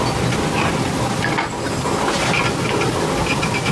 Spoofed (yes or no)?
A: no